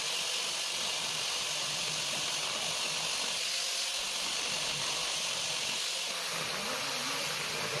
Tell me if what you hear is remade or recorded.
recorded